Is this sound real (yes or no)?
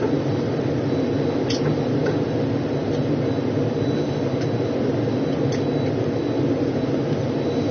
yes